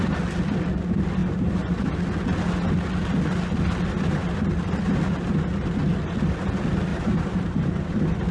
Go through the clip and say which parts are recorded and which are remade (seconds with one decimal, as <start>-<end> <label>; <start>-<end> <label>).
0.0-1.2 recorded; 1.2-1.8 remade; 1.8-6.9 recorded; 6.9-8.3 remade